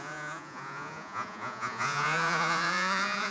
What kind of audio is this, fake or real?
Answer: fake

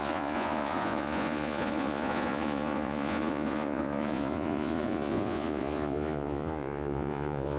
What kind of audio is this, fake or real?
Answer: fake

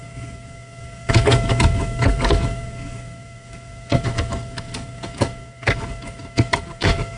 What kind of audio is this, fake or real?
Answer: fake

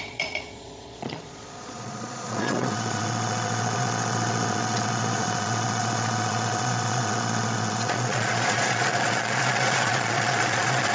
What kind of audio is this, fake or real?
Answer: fake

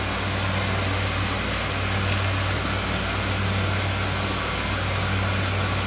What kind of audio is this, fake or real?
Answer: real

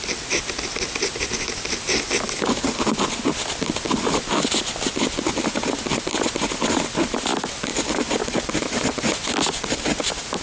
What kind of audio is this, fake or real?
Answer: real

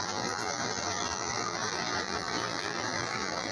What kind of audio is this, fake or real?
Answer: fake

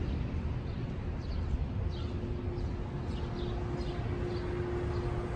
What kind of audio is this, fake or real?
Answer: real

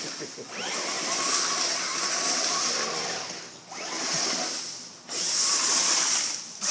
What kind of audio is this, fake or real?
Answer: real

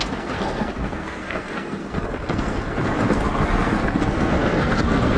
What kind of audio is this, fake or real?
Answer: fake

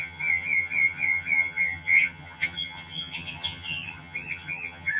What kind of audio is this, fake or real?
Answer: fake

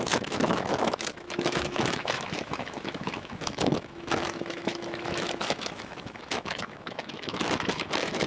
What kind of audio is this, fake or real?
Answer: fake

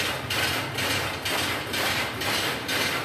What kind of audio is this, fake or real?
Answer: real